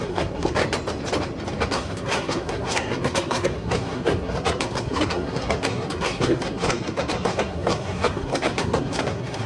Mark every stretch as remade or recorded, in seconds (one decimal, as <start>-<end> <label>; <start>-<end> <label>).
0.0-0.6 remade; 0.6-1.7 recorded; 1.7-9.5 remade